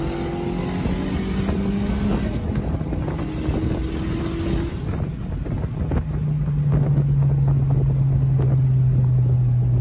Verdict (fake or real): real